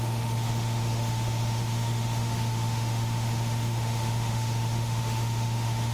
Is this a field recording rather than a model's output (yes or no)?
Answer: no